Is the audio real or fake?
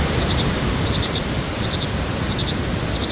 fake